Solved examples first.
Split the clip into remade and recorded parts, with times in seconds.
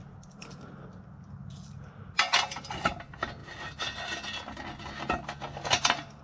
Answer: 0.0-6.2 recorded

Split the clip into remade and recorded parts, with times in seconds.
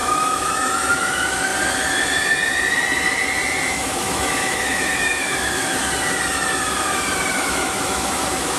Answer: 0.0-1.5 remade; 1.5-3.7 recorded; 3.7-5.8 remade; 5.8-7.3 recorded; 7.3-8.6 remade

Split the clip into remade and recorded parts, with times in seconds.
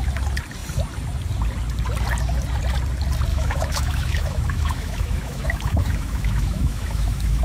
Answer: 0.0-3.3 recorded; 3.3-7.4 remade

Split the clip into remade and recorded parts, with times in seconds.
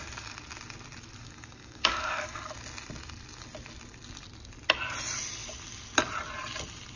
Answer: 0.0-1.2 recorded; 1.2-2.5 remade; 2.5-7.0 recorded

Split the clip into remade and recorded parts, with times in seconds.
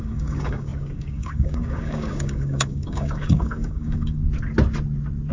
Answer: 0.0-4.2 remade; 4.2-5.3 recorded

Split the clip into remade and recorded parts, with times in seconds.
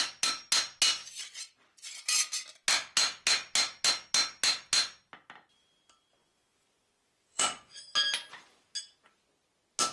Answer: 0.0-6.2 recorded; 6.2-7.8 remade; 7.8-9.9 recorded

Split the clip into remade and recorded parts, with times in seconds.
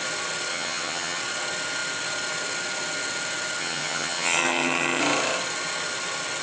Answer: 0.0-0.5 recorded; 0.5-1.2 remade; 1.2-3.6 recorded; 3.6-5.0 remade; 5.0-6.4 recorded